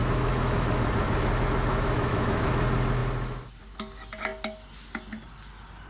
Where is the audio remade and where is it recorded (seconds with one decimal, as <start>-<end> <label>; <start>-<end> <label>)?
0.0-0.9 remade; 0.9-1.7 recorded; 1.7-2.5 remade; 2.5-5.9 recorded